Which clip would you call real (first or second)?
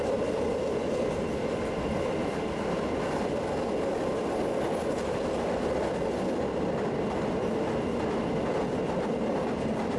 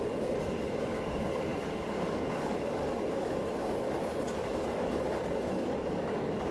first